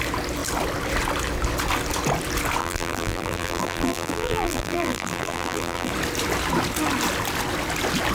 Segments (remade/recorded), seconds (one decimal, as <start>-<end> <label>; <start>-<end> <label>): 0.0-2.6 recorded; 2.6-5.9 remade; 5.9-8.1 recorded